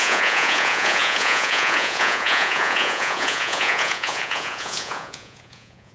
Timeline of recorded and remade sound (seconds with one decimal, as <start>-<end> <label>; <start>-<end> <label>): 0.0-5.9 remade